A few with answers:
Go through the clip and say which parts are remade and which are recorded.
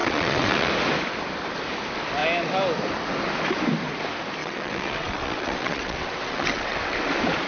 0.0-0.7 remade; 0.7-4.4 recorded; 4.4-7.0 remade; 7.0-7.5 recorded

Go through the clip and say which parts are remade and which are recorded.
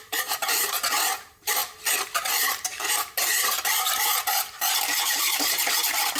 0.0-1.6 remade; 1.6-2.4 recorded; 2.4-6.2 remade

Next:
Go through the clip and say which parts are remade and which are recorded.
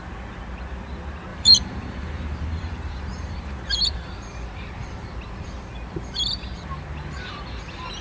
0.0-1.3 recorded; 1.3-3.8 remade; 3.8-8.0 recorded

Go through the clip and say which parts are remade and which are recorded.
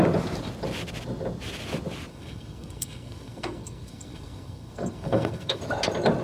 0.0-2.1 recorded; 2.1-5.6 remade; 5.6-6.2 recorded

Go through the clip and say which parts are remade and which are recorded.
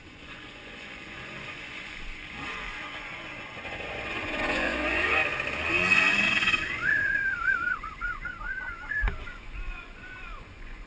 0.0-5.2 remade; 5.2-5.7 recorded; 5.7-10.9 remade